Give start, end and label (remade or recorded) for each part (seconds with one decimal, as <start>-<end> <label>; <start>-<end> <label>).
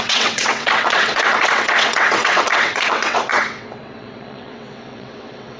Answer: 0.0-5.6 remade